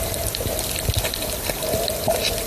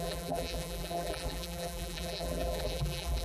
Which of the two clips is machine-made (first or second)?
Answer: second